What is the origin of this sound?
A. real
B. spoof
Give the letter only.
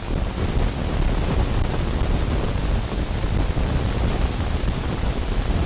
A